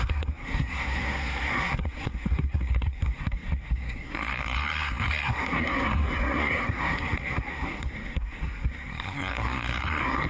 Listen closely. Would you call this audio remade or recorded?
remade